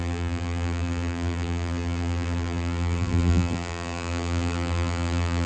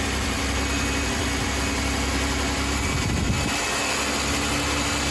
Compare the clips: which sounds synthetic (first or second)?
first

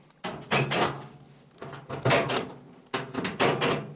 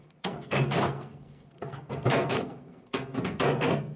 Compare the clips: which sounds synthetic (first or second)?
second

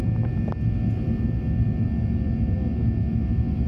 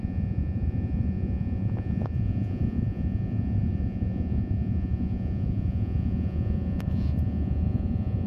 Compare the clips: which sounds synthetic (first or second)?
second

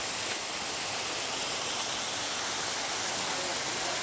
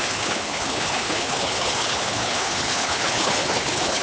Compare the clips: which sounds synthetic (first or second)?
second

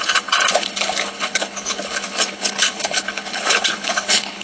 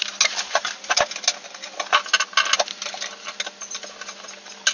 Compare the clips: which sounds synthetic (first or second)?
first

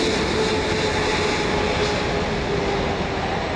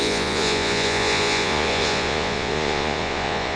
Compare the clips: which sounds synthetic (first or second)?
second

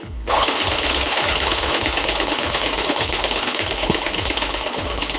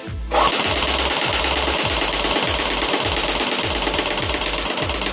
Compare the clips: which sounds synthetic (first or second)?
first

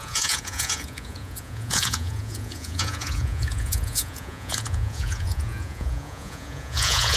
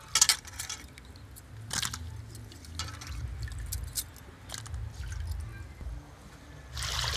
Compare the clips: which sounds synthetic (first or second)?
first